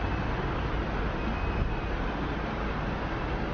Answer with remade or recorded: recorded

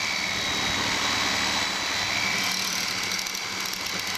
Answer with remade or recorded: recorded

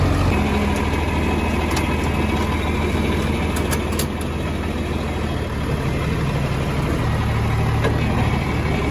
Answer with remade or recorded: recorded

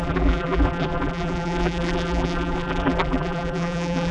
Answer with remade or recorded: remade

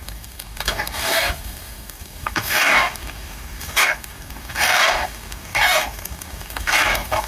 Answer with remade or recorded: remade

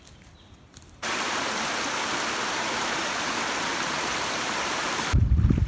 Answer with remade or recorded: remade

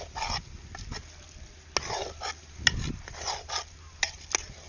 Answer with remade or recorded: recorded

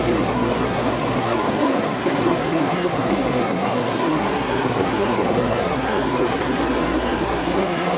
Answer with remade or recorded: remade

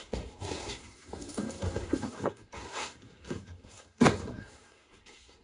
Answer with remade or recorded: remade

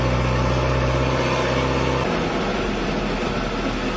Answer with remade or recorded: recorded